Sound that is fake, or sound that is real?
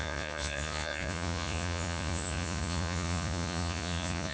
fake